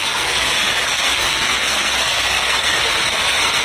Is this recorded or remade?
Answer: remade